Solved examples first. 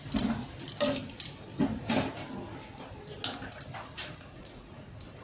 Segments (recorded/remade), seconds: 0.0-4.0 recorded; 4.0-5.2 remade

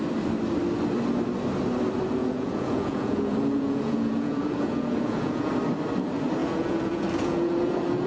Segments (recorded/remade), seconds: 0.0-2.2 recorded; 2.2-5.5 remade; 5.5-6.4 recorded; 6.4-8.1 remade